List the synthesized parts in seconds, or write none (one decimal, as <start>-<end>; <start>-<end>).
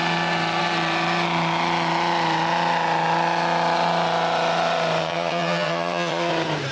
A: 5.0-6.3